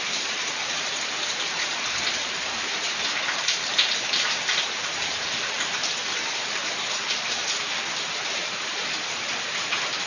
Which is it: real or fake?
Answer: fake